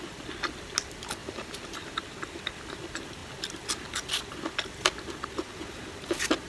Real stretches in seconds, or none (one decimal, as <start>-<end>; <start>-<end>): 0.0-1.2; 2.0-6.5